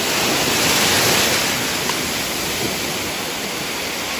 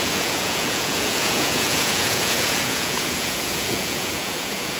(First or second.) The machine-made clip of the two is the second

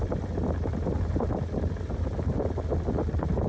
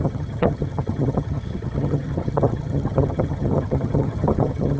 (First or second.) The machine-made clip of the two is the second